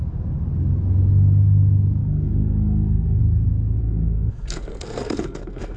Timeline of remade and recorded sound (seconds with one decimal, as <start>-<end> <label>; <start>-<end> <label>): 0.0-2.0 recorded; 2.0-3.2 remade; 3.2-3.8 recorded; 3.8-5.8 remade